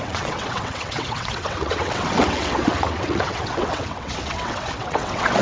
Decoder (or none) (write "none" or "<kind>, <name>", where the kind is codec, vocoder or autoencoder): vocoder, WaveNeXt